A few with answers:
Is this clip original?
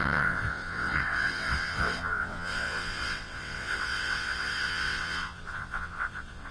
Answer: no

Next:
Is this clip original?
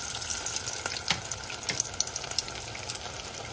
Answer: yes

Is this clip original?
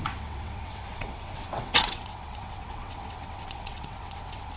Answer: no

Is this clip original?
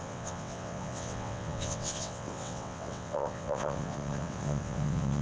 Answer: no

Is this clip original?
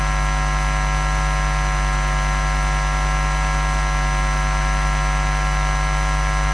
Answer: yes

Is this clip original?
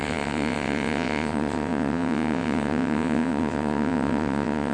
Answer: no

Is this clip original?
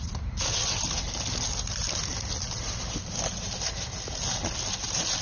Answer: yes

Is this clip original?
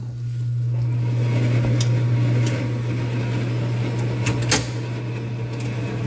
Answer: yes